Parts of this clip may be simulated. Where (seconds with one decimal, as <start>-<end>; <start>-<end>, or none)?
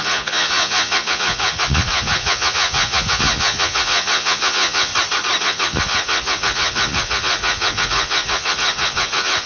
0.0-4.9; 5.4-9.5